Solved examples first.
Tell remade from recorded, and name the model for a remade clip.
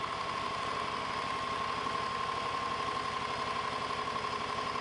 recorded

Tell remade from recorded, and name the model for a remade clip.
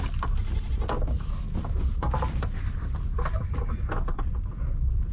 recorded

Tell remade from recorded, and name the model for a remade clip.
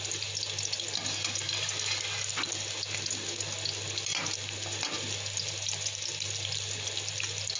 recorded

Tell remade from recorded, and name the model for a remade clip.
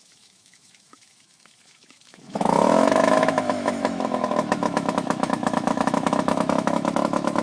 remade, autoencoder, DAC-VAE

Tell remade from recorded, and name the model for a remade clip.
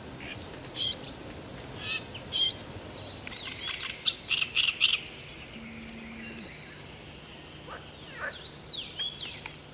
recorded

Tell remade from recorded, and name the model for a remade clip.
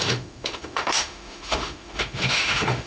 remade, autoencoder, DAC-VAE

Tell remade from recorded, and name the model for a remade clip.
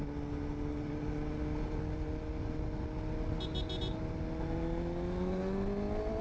recorded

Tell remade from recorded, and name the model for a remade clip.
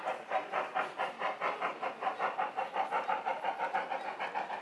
recorded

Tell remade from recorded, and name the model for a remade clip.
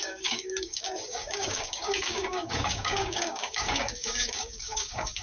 remade, codec, DAC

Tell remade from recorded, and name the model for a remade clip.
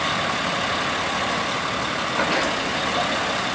recorded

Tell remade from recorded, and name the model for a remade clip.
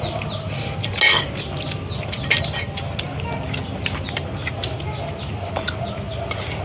recorded